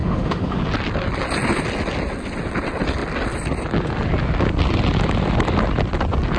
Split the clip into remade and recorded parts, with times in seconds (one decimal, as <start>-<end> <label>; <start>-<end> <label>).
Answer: 0.0-0.6 remade; 0.6-6.4 recorded